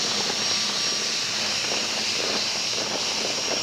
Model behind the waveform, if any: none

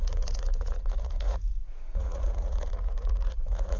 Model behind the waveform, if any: vocoder, Vocos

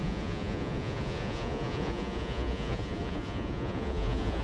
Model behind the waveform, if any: vocoder, Vocos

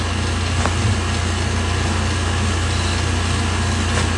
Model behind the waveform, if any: none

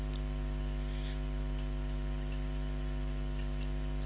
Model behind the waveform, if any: none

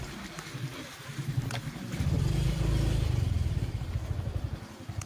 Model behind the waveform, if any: none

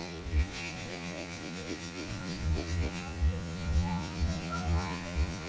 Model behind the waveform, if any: vocoder, Vocos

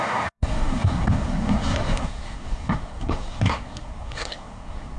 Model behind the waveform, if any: codec, SNAC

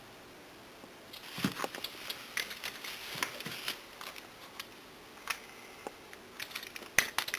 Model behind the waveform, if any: none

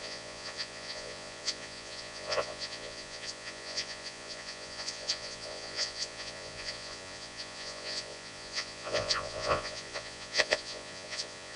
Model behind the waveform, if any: vocoder, Vocos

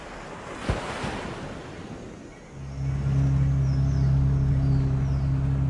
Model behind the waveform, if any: none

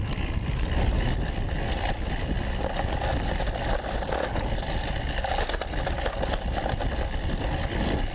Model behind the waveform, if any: none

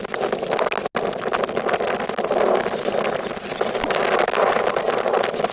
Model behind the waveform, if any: none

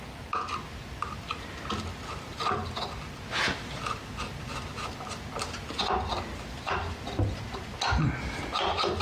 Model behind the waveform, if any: none